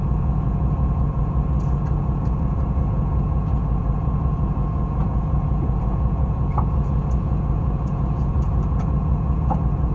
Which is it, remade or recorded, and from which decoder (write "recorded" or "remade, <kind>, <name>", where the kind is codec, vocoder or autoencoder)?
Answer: remade, vocoder, Vocos